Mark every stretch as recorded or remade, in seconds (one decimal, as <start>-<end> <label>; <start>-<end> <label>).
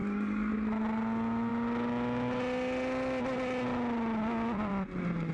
0.0-0.5 remade; 0.5-5.3 recorded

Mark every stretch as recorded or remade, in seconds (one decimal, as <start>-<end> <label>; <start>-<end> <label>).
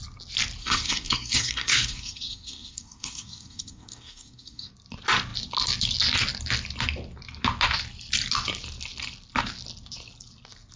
0.0-0.6 recorded; 0.6-4.7 remade; 4.7-10.8 recorded